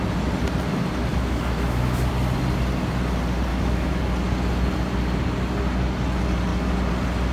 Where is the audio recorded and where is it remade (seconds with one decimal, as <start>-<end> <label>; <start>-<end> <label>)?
0.0-1.1 recorded; 1.1-2.1 remade; 2.1-3.5 recorded; 3.5-4.0 remade; 4.0-7.3 recorded